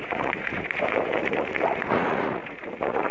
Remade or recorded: remade